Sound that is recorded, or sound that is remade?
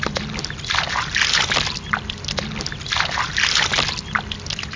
recorded